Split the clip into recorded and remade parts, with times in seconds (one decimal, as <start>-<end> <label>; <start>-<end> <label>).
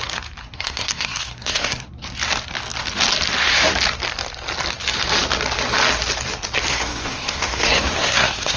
0.0-0.4 recorded; 0.4-1.9 remade; 1.9-6.7 recorded; 6.7-8.6 remade